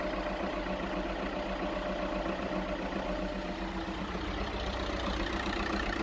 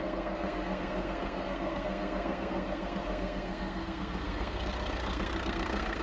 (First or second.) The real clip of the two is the first